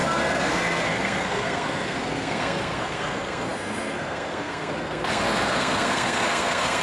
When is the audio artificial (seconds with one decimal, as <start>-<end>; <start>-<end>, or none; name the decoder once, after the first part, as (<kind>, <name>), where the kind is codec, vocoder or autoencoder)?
0.0-6.8 (codec, SNAC)